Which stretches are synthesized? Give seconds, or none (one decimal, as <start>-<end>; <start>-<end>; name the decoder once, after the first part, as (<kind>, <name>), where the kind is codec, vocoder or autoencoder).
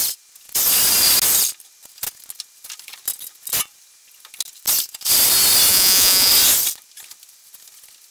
5.7-6.3 (vocoder, Vocos)